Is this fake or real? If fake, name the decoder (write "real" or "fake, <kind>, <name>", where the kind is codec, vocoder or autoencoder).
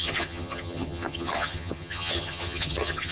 fake, vocoder, HiFi-GAN